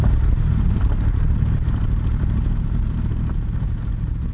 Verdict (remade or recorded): recorded